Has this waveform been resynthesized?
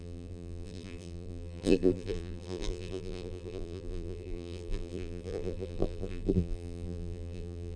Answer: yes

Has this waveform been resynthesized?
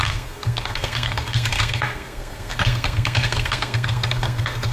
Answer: yes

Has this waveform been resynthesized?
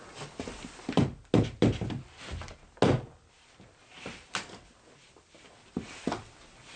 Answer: no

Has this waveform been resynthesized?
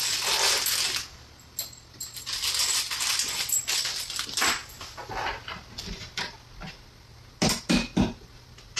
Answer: no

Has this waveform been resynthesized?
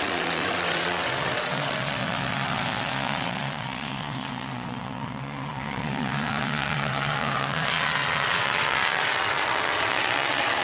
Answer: yes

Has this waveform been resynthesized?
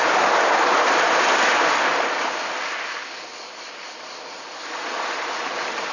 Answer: no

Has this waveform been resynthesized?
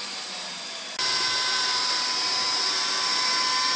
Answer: no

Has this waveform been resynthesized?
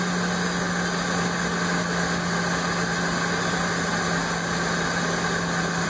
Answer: no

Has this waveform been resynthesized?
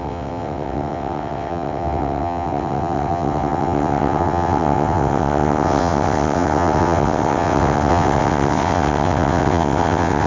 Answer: yes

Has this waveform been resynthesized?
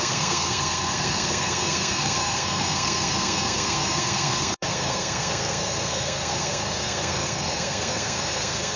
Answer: yes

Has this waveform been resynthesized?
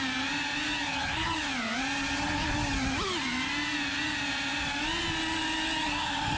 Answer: no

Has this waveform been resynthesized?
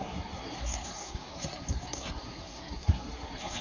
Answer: yes